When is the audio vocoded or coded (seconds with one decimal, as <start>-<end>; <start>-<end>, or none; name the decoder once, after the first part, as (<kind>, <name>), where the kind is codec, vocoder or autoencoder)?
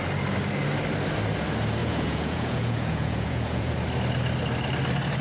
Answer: 1.8-3.7 (vocoder, Vocos)